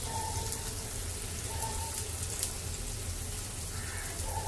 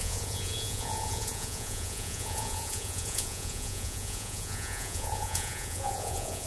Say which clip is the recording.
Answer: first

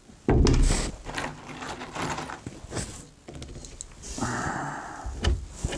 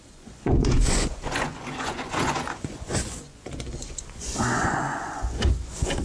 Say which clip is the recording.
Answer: first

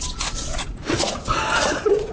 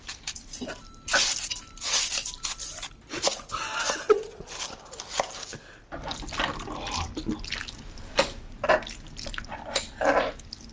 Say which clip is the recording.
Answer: second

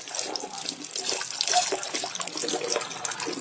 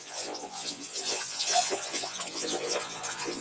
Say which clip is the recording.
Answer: first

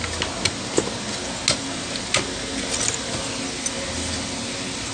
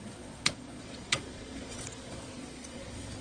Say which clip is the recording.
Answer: first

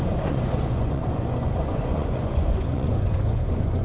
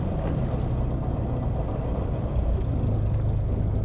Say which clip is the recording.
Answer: second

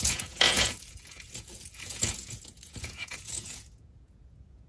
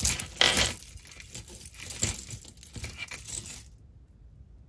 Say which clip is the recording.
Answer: second